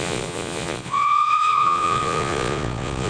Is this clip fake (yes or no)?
yes